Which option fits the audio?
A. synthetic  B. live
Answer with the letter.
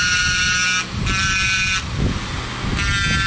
B